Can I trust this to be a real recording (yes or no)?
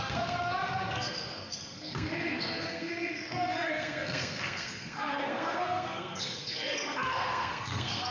no